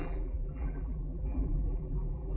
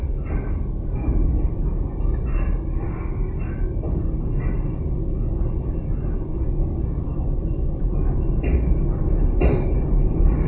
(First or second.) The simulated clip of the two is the first